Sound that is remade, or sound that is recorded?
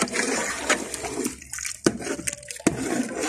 recorded